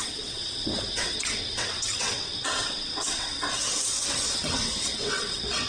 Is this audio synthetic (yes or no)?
yes